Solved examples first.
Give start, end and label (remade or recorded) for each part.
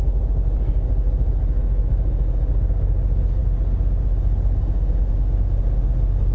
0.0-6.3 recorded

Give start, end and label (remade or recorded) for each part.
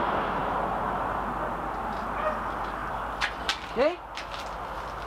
0.0-5.1 recorded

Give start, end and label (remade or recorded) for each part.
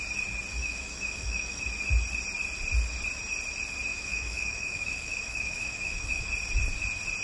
0.0-0.6 recorded; 0.6-1.6 remade; 1.6-3.9 recorded; 3.9-6.3 remade; 6.3-7.2 recorded